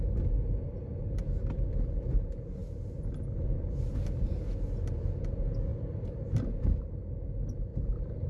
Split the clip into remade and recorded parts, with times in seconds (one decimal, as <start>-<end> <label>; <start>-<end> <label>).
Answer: 0.0-5.7 recorded; 5.7-6.8 remade; 6.8-7.7 recorded; 7.7-8.3 remade